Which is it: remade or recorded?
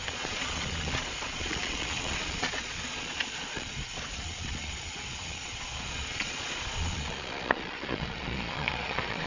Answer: remade